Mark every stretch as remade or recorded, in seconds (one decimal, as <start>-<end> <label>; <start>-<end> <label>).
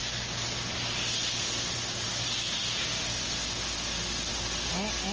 0.0-5.1 recorded